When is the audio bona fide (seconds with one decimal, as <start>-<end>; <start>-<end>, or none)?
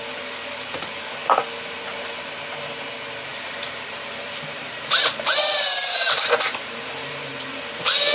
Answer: 0.0-3.3; 7.3-8.1